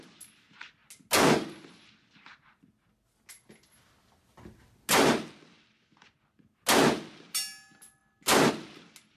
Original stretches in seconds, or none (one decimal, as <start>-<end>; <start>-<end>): 0.0-9.2